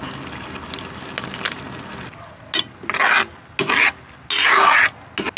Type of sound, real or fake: real